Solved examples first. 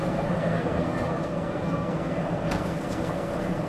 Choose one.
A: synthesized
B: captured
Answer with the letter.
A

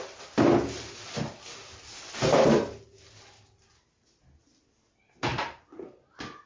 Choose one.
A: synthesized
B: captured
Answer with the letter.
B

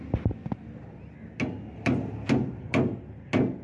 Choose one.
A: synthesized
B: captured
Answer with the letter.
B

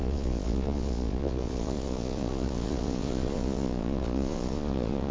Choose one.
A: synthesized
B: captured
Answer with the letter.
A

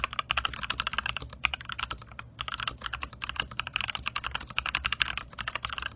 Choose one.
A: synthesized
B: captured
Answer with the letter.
B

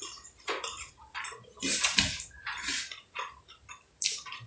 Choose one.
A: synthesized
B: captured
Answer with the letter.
A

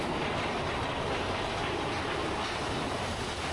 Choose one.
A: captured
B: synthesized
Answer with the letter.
A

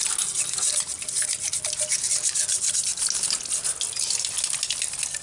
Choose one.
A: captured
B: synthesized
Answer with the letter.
A